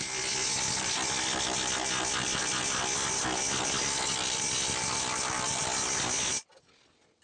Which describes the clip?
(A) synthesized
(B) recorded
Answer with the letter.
B